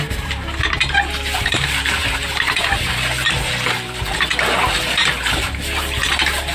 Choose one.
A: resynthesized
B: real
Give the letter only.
A